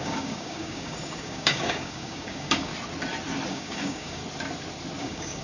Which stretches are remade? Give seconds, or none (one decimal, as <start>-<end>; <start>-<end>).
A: 0.0-2.7; 3.5-4.2; 5.0-5.4